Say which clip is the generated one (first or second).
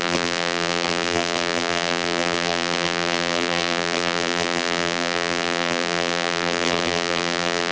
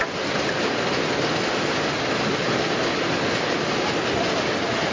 first